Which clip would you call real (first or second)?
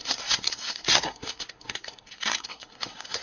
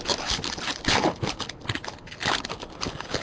second